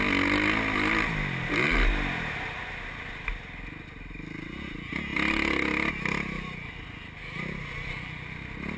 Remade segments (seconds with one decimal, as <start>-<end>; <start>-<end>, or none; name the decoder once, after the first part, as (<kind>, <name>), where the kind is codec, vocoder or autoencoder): none